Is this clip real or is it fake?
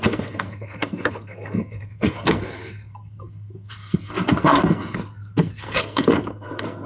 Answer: fake